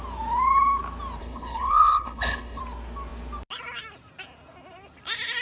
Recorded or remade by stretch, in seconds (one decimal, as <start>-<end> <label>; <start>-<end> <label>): 0.0-1.2 recorded; 1.2-2.6 remade; 2.6-5.4 recorded